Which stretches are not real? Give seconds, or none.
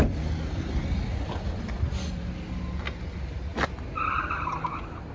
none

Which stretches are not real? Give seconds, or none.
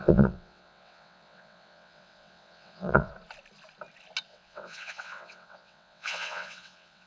0.0-3.1 (vocoder, WaveNeXt); 4.3-7.1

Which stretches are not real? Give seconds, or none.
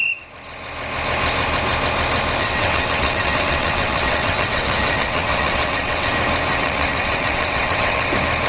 2.4-6.1 (vocoder, WaveNeXt); 6.5-8.1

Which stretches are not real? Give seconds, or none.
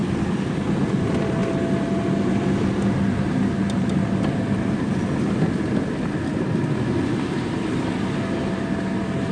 none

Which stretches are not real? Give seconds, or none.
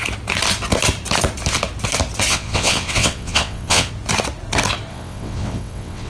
2.3-3.9 (vocoder, WaveNeXt); 4.9-6.1